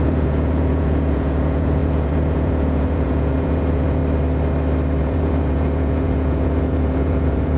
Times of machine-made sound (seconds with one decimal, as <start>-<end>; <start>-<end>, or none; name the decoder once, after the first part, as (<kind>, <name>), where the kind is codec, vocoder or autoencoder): 0.0-4.0 (vocoder, Vocos); 5.0-7.6

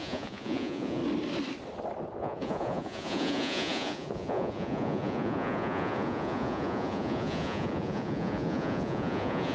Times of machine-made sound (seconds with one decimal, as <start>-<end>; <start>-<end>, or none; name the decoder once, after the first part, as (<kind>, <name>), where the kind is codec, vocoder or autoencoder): 0.0-1.0 (vocoder, Vocos); 2.2-9.5

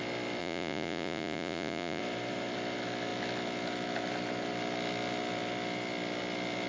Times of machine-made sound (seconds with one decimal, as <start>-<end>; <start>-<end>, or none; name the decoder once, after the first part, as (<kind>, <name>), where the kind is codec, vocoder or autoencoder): 0.4-2.0 (vocoder, Vocos)